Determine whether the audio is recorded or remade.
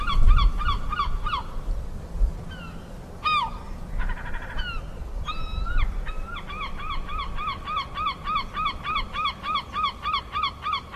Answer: recorded